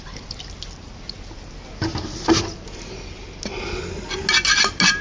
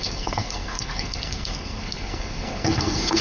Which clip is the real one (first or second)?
first